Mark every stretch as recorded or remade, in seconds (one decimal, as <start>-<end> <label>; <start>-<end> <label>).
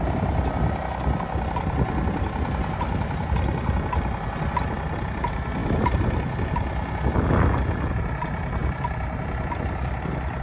0.0-10.4 recorded